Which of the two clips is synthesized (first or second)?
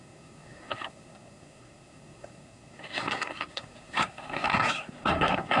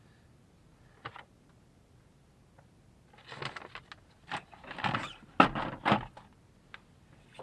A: first